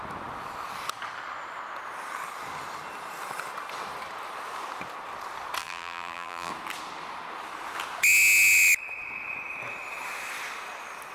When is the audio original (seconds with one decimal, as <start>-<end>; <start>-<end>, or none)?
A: 0.0-5.6; 6.5-11.1